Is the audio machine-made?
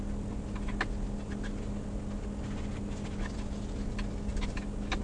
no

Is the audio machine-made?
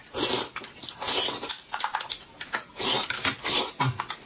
no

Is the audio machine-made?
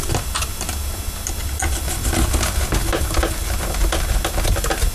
no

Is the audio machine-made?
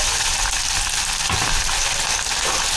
no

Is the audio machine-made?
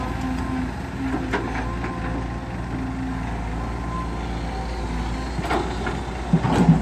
no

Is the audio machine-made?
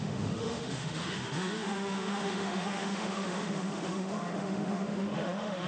yes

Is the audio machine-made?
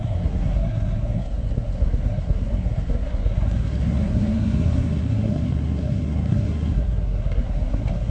yes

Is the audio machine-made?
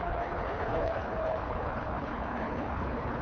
yes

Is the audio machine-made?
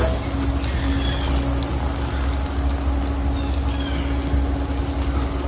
no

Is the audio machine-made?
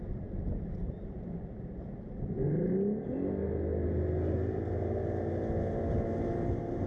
no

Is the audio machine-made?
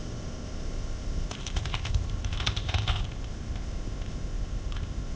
yes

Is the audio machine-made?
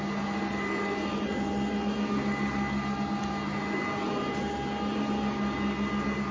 no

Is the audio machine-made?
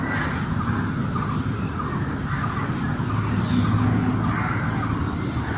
no